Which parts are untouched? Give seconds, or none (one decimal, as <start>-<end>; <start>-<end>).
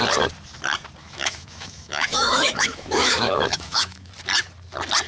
0.0-1.0; 4.1-5.1